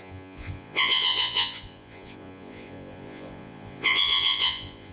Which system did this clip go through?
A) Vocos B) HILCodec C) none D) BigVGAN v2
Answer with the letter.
A